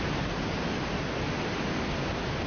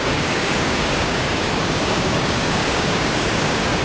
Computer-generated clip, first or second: second